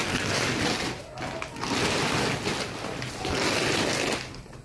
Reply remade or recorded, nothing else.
recorded